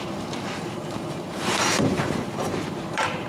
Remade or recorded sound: remade